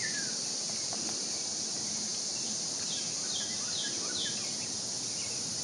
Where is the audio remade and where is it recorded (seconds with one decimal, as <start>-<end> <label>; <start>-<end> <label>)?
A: 0.0-5.6 recorded